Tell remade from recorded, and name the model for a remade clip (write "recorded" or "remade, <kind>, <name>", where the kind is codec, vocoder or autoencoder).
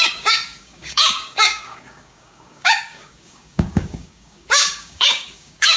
remade, codec, DAC